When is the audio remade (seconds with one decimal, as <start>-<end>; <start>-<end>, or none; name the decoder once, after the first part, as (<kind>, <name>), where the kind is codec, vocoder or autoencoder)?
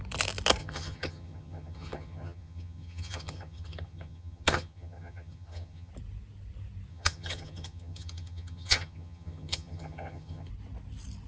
0.6-5.9 (vocoder, HiFi-GAN); 6.9-10.5